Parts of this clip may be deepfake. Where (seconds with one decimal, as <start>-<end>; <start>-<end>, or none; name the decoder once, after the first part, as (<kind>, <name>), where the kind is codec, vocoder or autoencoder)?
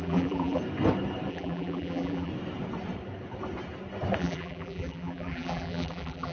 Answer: 0.0-0.6 (vocoder, BigVGAN v2); 1.3-2.3; 4.2-6.3